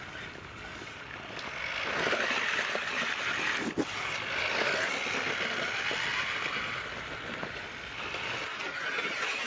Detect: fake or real real